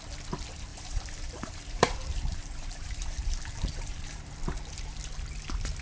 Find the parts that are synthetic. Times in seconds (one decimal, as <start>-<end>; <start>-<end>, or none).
0.7-4.2